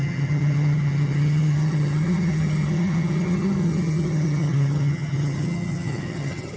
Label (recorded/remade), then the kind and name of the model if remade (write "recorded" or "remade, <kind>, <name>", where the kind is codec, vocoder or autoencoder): remade, vocoder, HiFi-GAN